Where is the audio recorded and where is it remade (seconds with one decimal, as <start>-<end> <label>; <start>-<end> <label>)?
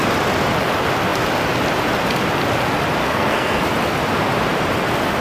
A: 0.0-3.0 recorded; 3.0-3.6 remade; 3.6-5.2 recorded